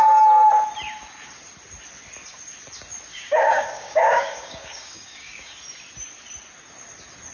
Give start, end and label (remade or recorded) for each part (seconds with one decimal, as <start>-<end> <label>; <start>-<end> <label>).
0.0-3.1 recorded; 3.1-5.6 remade; 5.6-7.3 recorded